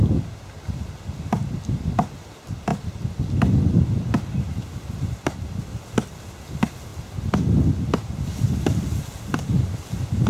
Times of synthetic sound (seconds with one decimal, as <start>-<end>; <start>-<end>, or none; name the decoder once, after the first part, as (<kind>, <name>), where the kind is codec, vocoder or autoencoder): none